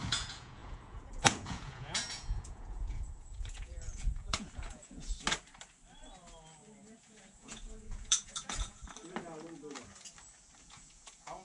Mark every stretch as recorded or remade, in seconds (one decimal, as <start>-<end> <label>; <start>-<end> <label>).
0.0-5.1 remade; 5.1-7.0 recorded; 7.0-8.8 remade; 8.8-10.6 recorded; 10.6-11.4 remade